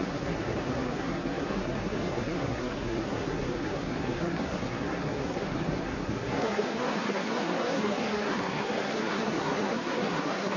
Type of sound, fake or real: fake